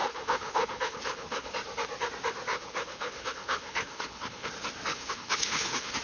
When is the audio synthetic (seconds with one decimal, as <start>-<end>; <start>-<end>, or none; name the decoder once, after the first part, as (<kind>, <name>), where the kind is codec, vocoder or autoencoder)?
0.0-1.5 (codec, HILCodec); 2.5-4.5; 4.9-6.0